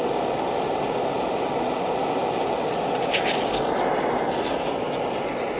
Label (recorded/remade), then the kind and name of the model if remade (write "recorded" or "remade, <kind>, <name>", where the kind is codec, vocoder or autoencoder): recorded